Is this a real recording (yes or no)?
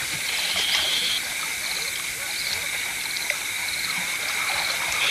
no